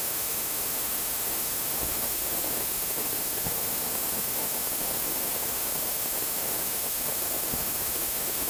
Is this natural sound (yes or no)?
no